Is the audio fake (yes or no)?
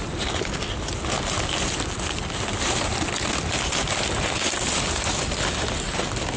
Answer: no